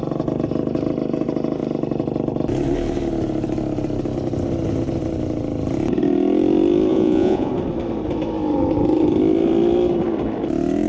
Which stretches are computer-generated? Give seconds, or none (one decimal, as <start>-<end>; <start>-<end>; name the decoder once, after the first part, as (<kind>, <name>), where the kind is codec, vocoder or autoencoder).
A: 6.9-7.5 (vocoder, Vocos)